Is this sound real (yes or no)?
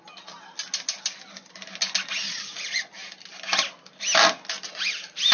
yes